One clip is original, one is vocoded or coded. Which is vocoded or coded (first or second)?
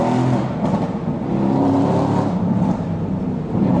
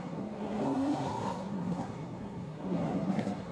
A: second